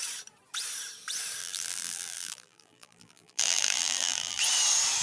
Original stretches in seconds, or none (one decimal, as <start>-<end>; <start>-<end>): 0.0-1.4; 4.4-5.0